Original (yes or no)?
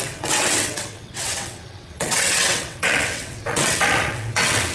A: no